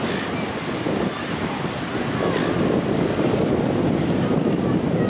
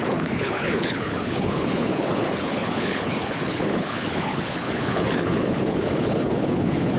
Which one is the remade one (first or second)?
second